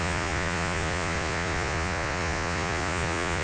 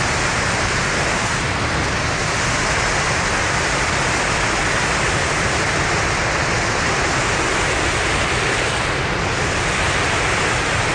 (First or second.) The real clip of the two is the second